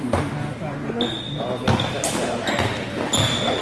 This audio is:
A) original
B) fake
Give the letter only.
A